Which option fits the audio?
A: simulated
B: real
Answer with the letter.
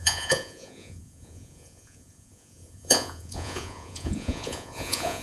A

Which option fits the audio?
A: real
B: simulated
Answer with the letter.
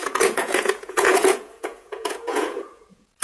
B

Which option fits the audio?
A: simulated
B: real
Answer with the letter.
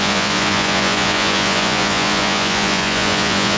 A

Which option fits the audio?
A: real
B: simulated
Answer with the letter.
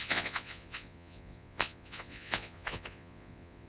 B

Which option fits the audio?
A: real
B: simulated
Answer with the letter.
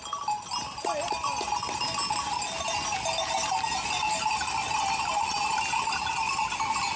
A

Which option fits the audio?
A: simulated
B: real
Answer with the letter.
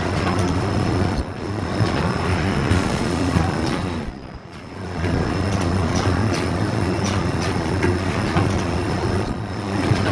A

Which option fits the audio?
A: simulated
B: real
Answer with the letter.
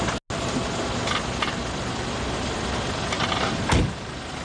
B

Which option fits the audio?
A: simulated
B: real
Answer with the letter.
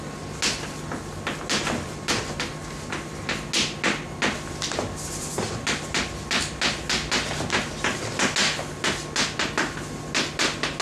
B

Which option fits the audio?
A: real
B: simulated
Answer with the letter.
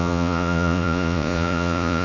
B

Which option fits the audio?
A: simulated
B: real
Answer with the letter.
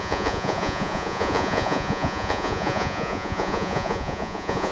A